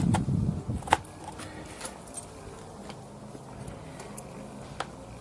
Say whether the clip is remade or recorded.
recorded